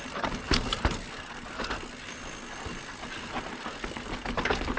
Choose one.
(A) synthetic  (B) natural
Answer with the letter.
B